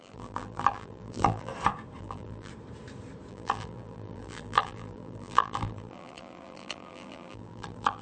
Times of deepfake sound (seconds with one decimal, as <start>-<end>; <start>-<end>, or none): 0.0-1.5; 2.0-2.5; 3.3-8.0